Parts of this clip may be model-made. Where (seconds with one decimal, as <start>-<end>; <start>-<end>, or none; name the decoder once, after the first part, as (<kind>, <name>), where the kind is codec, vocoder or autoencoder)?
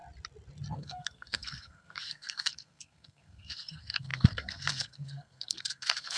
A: 0.7-6.2 (codec, SNAC)